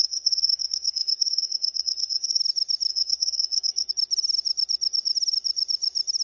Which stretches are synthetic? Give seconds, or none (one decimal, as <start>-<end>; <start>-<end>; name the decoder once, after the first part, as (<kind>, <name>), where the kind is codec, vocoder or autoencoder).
0.0-2.4 (codec, SNAC); 2.9-3.9